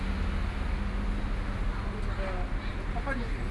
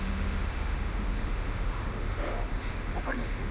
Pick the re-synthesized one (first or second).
second